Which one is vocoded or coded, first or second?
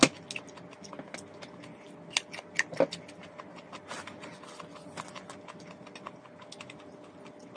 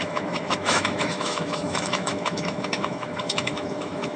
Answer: second